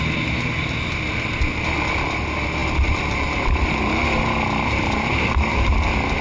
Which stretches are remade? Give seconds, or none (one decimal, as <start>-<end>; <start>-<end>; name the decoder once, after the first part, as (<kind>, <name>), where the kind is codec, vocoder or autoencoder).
none